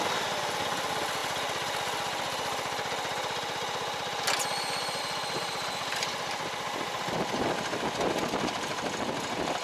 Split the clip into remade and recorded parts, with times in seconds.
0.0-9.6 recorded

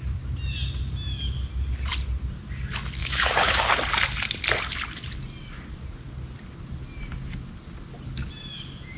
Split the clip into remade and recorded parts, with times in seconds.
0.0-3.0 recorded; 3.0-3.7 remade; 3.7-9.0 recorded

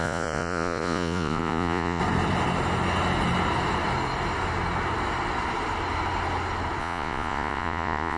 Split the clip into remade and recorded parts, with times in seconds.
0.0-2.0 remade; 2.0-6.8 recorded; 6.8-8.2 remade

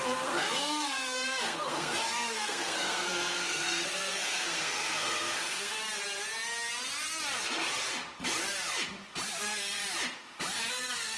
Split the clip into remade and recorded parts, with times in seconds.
0.0-5.8 remade; 5.8-9.4 recorded; 9.4-9.8 remade; 9.8-10.7 recorded; 10.7-11.2 remade

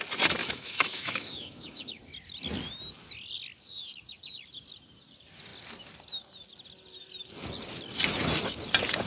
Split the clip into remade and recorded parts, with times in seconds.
0.0-0.4 recorded; 0.4-2.0 remade; 2.0-9.1 recorded